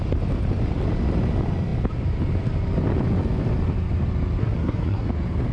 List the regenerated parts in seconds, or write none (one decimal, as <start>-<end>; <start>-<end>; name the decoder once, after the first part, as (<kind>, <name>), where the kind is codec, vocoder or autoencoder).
4.4-5.1 (codec, SNAC)